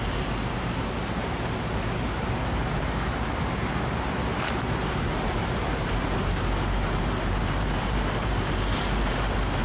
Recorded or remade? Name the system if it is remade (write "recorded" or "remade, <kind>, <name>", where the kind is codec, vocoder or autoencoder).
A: remade, vocoder, BigVGAN v2